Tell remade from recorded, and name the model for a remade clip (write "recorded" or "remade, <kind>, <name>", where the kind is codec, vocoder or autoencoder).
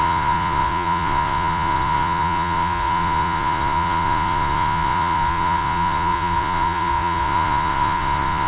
remade, vocoder, Vocos